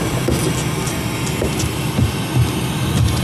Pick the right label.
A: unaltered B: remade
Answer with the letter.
A